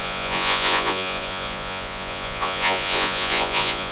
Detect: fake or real fake